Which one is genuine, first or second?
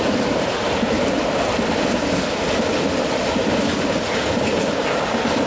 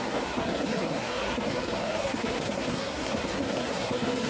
first